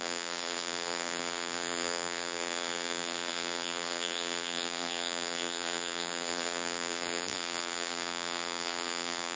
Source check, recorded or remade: remade